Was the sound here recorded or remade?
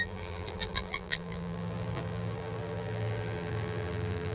remade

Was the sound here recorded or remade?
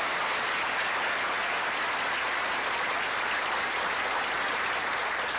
recorded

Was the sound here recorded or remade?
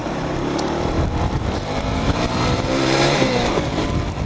remade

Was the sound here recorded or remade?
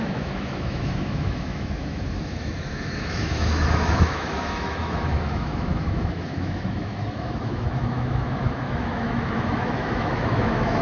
remade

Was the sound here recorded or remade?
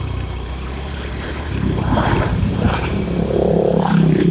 remade